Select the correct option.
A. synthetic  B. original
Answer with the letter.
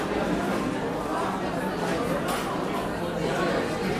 B